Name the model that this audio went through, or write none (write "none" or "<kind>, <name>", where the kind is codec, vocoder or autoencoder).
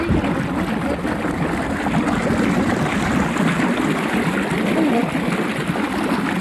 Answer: none